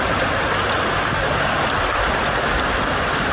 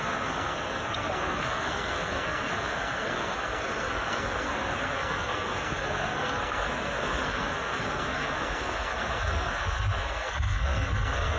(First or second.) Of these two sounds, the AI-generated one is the second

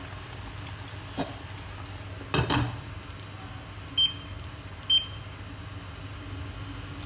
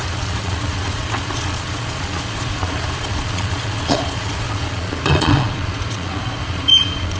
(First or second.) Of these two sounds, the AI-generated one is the second